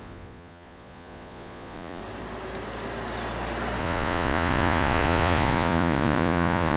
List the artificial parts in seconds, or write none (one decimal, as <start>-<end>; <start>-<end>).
0.0-2.0; 3.8-6.8